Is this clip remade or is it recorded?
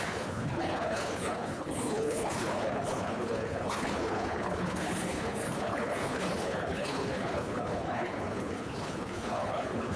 remade